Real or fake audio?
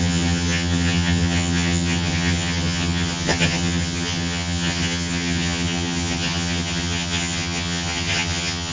fake